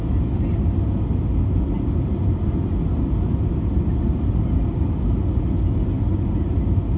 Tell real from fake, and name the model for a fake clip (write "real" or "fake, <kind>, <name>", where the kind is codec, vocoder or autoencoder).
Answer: real